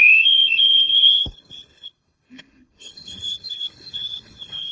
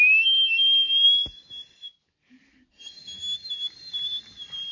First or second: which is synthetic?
first